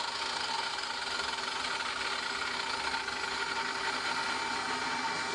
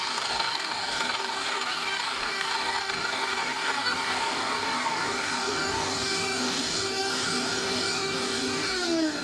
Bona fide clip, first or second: first